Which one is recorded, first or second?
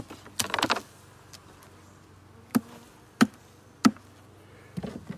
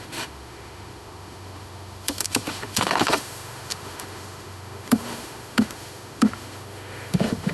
first